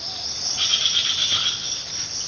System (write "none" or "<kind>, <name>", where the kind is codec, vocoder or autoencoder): none